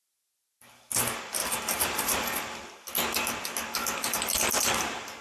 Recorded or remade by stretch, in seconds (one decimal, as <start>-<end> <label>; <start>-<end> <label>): 0.0-5.2 recorded